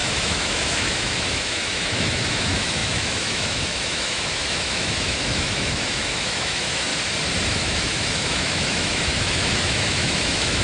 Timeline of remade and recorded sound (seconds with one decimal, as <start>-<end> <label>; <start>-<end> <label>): 0.0-6.9 remade; 6.9-7.5 recorded; 7.5-10.6 remade